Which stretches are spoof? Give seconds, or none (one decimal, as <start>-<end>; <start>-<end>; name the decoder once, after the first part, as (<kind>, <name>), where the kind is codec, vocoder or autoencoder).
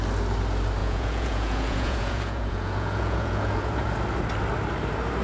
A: 0.8-3.9 (vocoder, Vocos)